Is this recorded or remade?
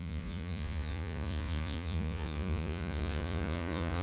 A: remade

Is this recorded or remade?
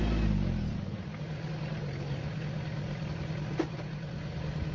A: recorded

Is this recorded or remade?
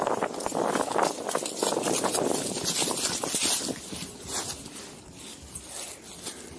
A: recorded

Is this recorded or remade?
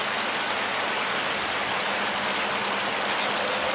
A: recorded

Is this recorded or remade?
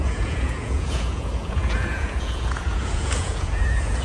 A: remade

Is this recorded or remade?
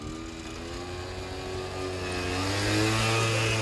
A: recorded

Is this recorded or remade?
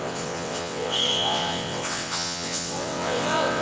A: remade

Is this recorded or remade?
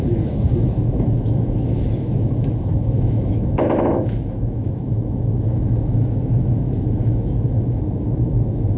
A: remade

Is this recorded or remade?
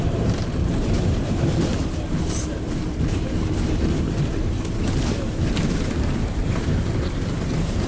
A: remade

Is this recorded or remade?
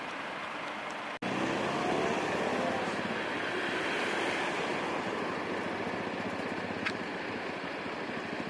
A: recorded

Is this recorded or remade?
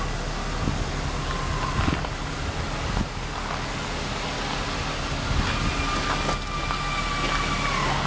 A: recorded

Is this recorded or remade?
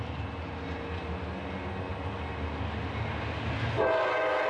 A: recorded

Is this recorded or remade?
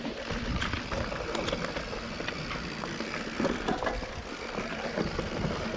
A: recorded